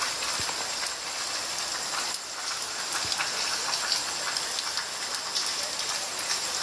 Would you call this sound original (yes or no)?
yes